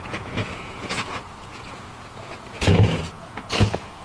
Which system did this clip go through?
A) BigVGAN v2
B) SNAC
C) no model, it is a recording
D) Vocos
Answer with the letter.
D